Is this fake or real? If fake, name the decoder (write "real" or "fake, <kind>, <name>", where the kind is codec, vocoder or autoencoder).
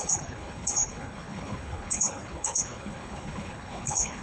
fake, codec, HILCodec